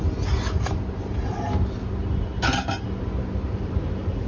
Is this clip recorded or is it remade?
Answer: recorded